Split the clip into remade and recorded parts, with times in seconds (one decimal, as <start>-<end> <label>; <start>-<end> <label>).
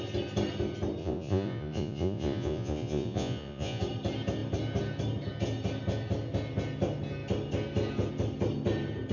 0.0-1.0 recorded; 1.0-3.8 remade; 3.8-9.1 recorded